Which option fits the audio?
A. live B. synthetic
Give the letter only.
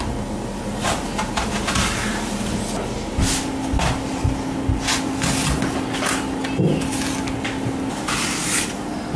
A